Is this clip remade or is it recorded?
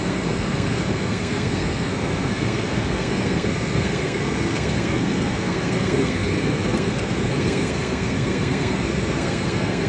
remade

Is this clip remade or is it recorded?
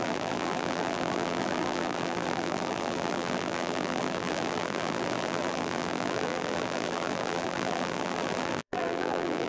remade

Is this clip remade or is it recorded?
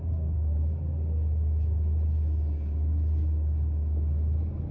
recorded